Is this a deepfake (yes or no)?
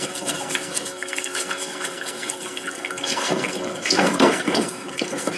yes